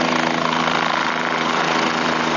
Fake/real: real